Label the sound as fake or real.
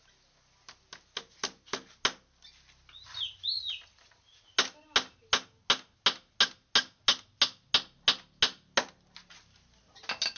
real